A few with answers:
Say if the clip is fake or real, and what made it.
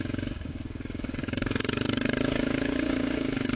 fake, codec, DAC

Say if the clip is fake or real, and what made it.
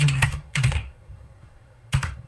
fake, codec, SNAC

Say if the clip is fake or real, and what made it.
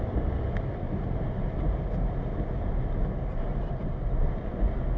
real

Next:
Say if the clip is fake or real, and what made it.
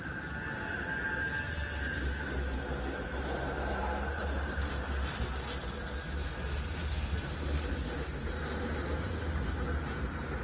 real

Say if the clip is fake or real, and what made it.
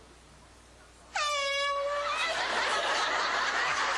real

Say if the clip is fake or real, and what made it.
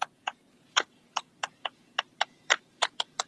fake, vocoder, Vocos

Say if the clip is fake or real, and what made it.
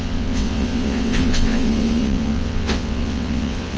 fake, vocoder, WaveNeXt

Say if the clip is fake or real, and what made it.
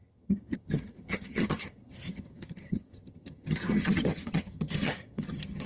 fake, vocoder, HiFi-GAN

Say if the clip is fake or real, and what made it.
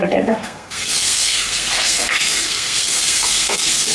fake, codec, SNAC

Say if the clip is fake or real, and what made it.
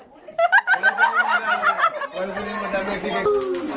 real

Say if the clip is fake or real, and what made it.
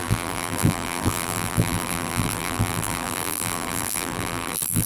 fake, vocoder, BigVGAN v2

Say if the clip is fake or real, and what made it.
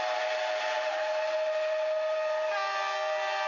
real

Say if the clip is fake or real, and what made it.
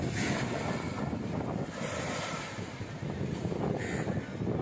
real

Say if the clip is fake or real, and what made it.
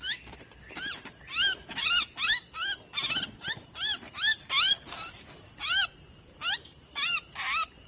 real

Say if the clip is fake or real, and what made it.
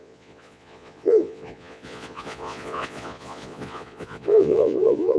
fake, vocoder, Vocos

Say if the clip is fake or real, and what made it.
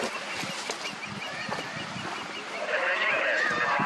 real